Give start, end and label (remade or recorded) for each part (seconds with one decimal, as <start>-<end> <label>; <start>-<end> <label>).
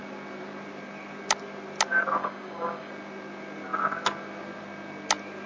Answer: 0.0-2.2 recorded; 2.2-2.9 remade; 2.9-5.5 recorded